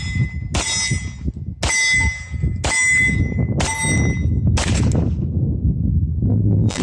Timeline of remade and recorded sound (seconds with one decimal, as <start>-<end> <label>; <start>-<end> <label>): 0.0-6.3 recorded; 6.3-6.8 remade